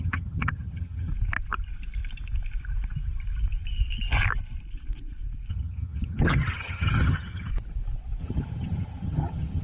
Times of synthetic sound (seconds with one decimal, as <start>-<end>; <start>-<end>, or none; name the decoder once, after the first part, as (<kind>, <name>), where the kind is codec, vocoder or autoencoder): 0.0-1.1 (vocoder, HiFi-GAN); 5.5-7.5; 8.2-9.6